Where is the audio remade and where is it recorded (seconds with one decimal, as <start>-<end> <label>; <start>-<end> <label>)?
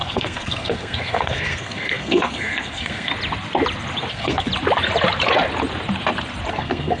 0.0-3.1 remade; 3.1-4.1 recorded; 4.1-4.5 remade; 4.5-6.5 recorded; 6.5-7.0 remade